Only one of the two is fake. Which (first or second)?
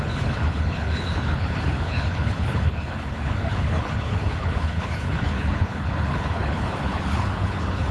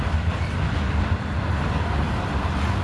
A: first